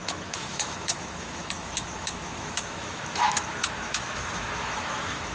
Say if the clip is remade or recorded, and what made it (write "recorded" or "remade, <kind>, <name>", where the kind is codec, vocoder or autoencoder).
remade, autoencoder, DAC-VAE